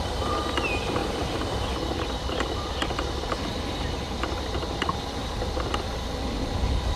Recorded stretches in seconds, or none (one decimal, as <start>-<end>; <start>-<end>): 0.0-1.0; 5.2-7.0